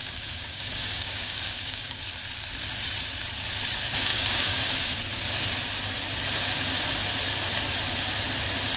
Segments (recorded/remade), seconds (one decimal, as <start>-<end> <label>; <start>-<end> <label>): 0.0-2.0 remade; 2.0-4.1 recorded; 4.1-4.7 remade; 4.7-8.8 recorded